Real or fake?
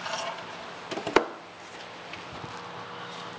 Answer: real